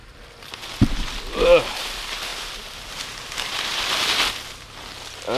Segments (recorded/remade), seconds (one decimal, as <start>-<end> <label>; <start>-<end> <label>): 0.0-5.4 recorded

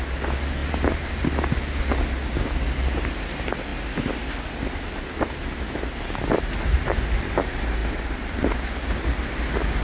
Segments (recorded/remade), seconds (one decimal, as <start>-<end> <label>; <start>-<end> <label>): 0.0-9.8 recorded

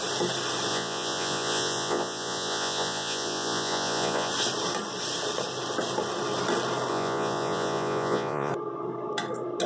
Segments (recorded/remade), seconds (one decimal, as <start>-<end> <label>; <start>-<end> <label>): 0.0-0.7 recorded; 0.7-4.3 remade; 4.3-6.9 recorded; 6.9-8.5 remade; 8.5-9.7 recorded

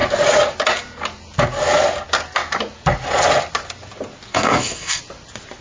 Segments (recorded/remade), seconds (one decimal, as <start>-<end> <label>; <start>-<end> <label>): 0.0-4.3 recorded; 4.3-5.0 remade; 5.0-5.6 recorded

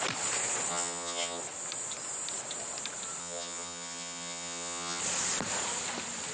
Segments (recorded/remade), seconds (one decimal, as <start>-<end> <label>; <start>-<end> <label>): 0.0-0.7 recorded; 0.7-1.4 remade; 1.4-3.2 recorded; 3.2-5.0 remade; 5.0-6.3 recorded

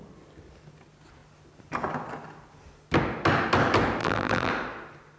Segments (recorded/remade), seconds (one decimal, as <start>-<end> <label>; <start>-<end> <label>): 0.0-4.0 recorded; 4.0-4.5 remade; 4.5-5.2 recorded